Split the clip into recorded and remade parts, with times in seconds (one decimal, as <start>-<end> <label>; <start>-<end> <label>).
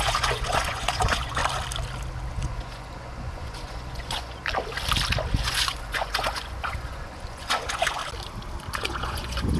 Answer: 0.0-1.4 remade; 1.4-2.4 recorded; 2.4-4.4 remade; 4.4-5.3 recorded; 5.3-8.0 remade; 8.0-8.8 recorded; 8.8-9.6 remade